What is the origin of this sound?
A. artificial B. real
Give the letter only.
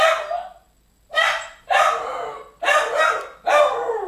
B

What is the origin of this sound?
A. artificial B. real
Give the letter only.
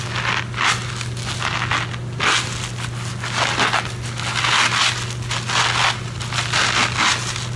B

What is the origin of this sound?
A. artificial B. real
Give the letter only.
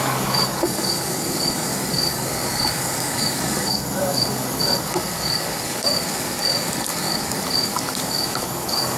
A